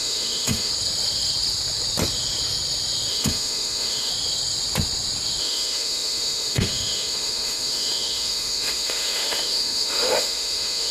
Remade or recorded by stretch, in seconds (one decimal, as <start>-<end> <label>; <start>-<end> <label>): 0.0-0.7 remade; 0.7-3.1 recorded; 3.1-4.1 remade; 4.1-5.4 recorded; 5.4-10.9 remade